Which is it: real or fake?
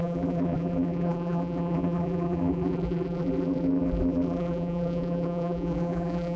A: fake